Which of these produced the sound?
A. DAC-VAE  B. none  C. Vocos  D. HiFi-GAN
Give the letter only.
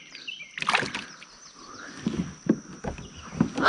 B